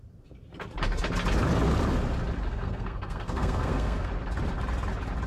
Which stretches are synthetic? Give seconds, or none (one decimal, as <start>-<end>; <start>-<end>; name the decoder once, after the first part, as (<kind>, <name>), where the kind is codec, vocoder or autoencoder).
2.5-4.1 (codec, SNAC)